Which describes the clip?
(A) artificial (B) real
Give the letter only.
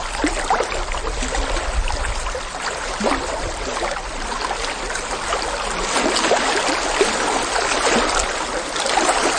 B